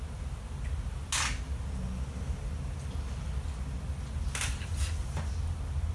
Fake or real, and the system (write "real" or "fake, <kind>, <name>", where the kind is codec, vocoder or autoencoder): real